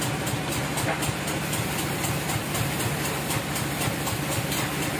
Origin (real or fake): real